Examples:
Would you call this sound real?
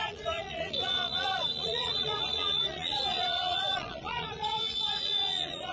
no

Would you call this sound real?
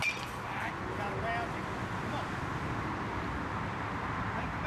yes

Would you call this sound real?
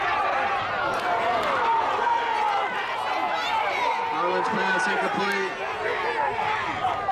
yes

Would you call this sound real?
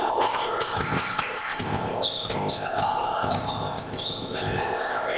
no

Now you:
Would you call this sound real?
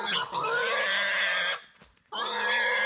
yes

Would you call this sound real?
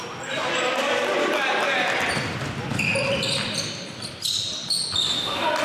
no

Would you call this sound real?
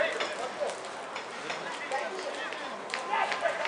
yes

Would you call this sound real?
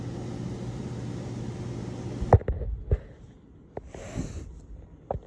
yes